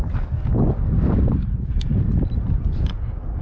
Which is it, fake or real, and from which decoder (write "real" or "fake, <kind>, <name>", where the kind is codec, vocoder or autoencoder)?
real